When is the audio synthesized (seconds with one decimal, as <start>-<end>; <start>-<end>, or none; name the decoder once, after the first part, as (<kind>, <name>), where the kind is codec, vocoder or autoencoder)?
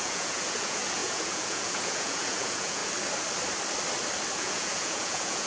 0.0-2.8 (vocoder, Vocos); 4.3-5.5